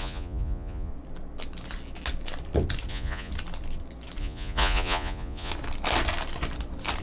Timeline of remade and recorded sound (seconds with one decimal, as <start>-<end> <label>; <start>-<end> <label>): 0.0-0.9 remade; 0.9-2.9 recorded; 2.9-3.3 remade; 3.3-4.2 recorded; 4.2-5.5 remade; 5.5-7.0 recorded